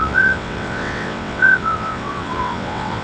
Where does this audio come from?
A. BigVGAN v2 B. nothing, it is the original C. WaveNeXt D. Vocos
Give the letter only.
C